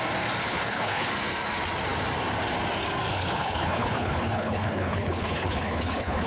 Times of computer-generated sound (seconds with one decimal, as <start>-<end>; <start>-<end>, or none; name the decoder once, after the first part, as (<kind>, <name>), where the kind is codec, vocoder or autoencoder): 0.4-1.1 (codec, HILCodec); 3.1-6.3